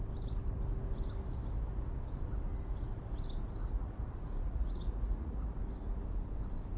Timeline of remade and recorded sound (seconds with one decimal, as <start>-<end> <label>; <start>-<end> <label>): 0.0-3.6 recorded; 3.6-5.6 remade; 5.6-6.8 recorded

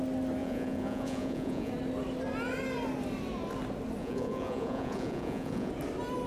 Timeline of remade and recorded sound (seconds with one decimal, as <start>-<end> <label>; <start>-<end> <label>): 0.0-0.4 recorded; 0.4-1.7 remade; 1.7-4.0 recorded; 4.0-5.7 remade; 5.7-6.3 recorded

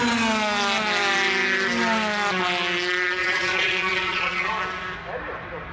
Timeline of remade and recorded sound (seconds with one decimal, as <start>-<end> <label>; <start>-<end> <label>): 0.0-3.2 recorded; 3.2-4.5 remade; 4.5-5.7 recorded